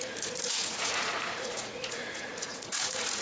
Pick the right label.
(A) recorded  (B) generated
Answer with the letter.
B